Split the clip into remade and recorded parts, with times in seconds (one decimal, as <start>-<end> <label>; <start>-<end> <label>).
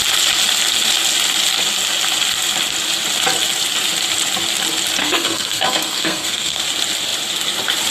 0.0-5.0 recorded; 5.0-6.6 remade; 6.6-7.9 recorded